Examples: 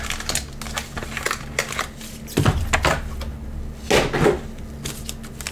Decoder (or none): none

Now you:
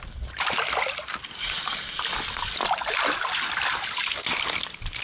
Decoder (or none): none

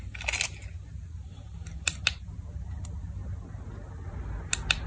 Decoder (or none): none